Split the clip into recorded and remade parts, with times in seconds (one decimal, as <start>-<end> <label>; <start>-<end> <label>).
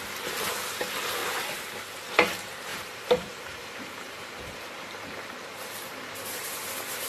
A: 0.0-2.7 recorded; 2.7-6.6 remade; 6.6-7.1 recorded